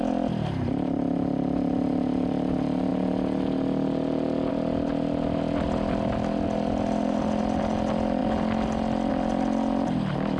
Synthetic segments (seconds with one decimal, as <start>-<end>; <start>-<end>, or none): none